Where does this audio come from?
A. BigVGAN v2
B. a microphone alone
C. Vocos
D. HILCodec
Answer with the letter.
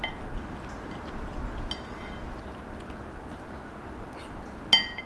B